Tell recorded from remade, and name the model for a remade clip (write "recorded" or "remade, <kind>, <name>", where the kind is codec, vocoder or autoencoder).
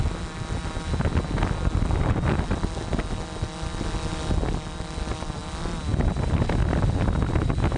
recorded